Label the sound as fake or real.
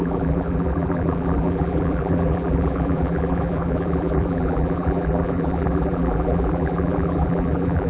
fake